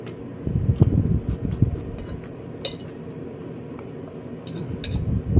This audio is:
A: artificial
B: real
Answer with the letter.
B